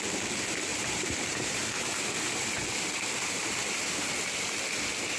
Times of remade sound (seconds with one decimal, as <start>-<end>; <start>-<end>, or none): 0.7-1.9